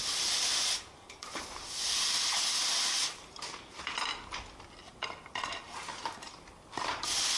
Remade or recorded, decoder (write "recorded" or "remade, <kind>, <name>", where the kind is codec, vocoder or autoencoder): recorded